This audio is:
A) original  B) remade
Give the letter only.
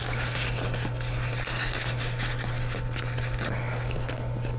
A